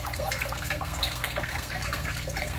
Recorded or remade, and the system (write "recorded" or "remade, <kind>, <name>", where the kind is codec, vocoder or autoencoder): remade, codec, SNAC